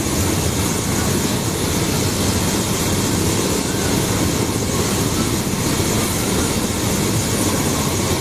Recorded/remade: recorded